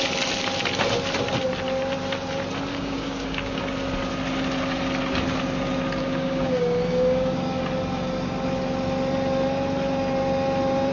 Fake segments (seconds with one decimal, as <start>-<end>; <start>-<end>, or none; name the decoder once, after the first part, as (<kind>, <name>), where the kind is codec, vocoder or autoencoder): 2.7-3.6 (codec, DAC); 6.0-7.6